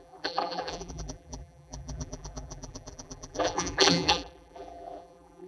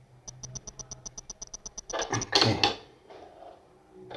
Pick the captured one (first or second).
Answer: second